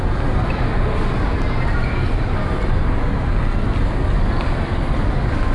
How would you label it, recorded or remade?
recorded